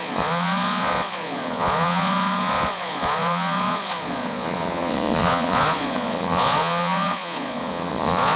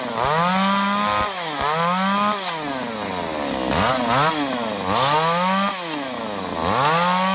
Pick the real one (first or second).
second